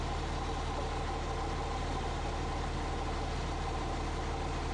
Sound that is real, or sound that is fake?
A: real